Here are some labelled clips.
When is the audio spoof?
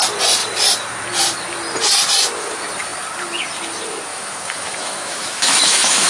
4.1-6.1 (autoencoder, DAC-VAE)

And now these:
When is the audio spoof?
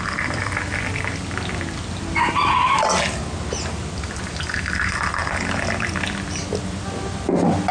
none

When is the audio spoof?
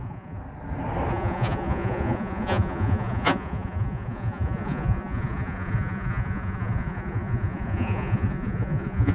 0.0-0.4 (vocoder, Vocos); 1.1-9.1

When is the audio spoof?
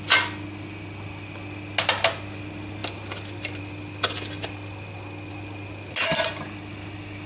none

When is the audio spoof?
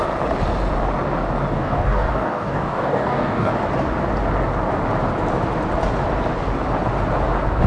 1.6-3.5 (codec, DAC)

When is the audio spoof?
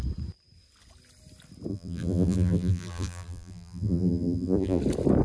1.7-4.8 (vocoder, BigVGAN v2)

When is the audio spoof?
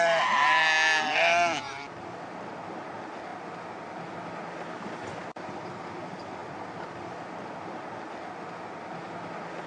none